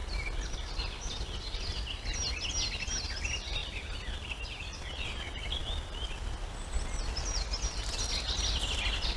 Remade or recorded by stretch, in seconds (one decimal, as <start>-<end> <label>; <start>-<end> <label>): 0.0-9.2 recorded